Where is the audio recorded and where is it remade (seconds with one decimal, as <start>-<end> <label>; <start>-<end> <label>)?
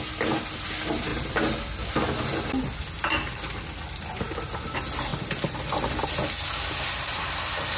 0.0-1.1 recorded; 1.1-1.9 remade; 1.9-7.8 recorded